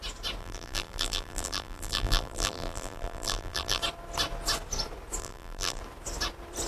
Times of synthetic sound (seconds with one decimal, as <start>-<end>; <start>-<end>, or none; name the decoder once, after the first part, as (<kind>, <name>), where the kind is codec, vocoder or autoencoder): 0.4-3.8 (vocoder, BigVGAN v2); 5.2-5.8

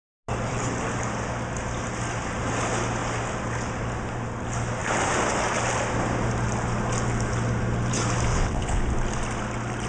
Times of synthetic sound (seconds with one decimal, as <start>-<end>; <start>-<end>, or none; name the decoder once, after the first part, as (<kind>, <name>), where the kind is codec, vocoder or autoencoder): 8.3-8.8 (vocoder, WaveNeXt)